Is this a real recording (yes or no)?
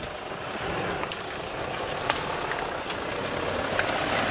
yes